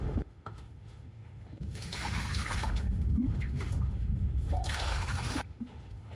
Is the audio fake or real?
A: fake